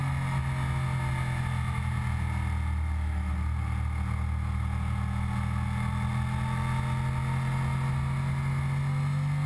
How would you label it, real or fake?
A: real